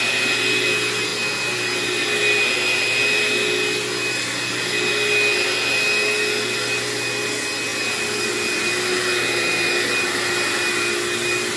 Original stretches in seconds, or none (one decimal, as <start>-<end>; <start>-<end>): 0.0-11.6